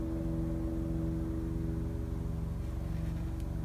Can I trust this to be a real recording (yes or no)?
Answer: yes